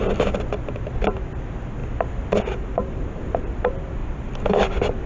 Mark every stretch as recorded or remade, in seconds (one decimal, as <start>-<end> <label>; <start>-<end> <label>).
0.0-5.1 recorded